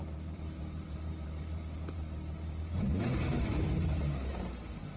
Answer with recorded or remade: remade